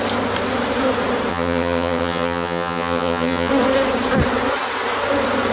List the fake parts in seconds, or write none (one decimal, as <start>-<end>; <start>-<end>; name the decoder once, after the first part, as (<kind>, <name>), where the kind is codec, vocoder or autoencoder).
1.3-3.5 (vocoder, HiFi-GAN)